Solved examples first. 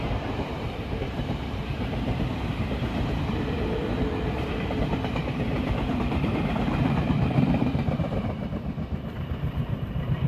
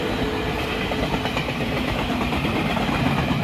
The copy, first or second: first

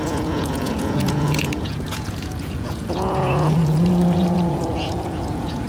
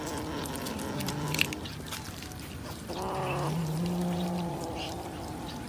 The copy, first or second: first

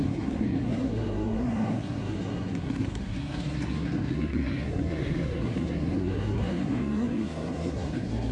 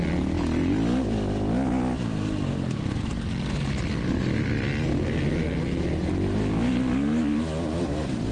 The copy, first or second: first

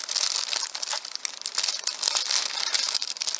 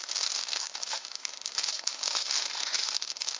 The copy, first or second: second